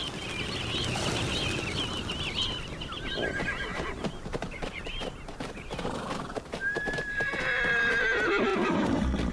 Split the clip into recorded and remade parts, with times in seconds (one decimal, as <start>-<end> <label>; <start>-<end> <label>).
0.0-3.7 recorded; 3.7-7.4 remade; 7.4-8.5 recorded; 8.5-9.3 remade